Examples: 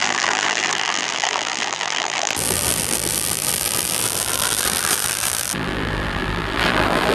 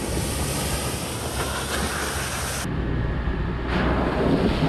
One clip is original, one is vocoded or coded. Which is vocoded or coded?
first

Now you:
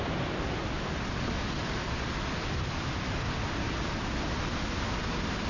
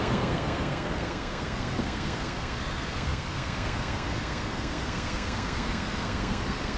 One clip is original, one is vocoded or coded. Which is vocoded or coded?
second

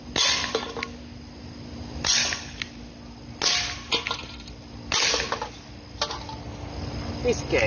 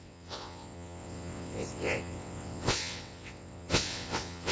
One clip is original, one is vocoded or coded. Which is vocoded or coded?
second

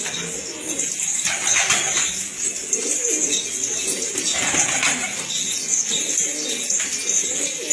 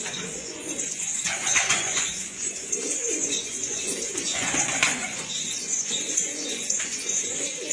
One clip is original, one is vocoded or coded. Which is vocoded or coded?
second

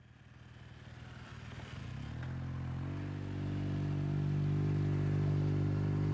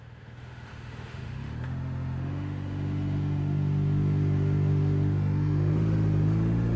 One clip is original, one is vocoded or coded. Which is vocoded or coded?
second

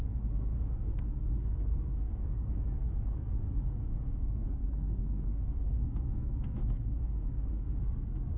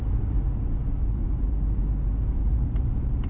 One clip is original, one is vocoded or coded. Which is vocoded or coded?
first